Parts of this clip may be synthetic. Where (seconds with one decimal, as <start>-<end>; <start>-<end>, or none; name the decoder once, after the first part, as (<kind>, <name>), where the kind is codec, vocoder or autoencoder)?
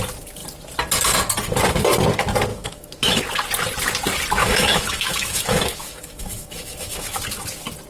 2.5-3.2 (autoencoder, DAC-VAE); 4.4-7.2